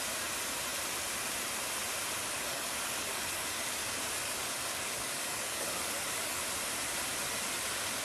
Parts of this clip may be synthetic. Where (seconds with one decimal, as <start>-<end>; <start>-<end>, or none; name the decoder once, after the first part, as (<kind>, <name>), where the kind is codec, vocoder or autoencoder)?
2.2-6.4 (codec, DAC)